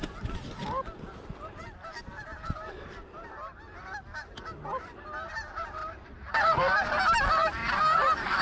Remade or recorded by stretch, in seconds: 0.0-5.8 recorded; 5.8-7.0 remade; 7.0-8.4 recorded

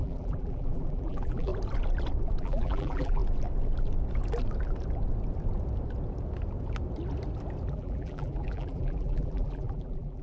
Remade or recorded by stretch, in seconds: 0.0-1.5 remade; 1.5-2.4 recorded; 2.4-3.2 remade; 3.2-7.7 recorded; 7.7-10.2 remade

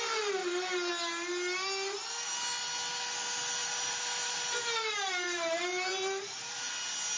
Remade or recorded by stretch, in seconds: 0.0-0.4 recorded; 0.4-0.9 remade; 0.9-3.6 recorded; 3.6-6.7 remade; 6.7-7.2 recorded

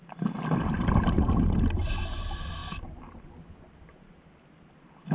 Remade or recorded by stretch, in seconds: 0.0-5.1 recorded

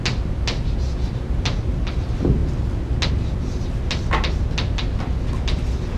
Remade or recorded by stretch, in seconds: 0.0-6.0 recorded